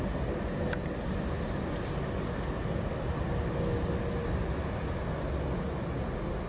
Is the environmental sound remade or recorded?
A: recorded